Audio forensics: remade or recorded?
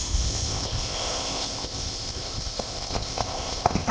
remade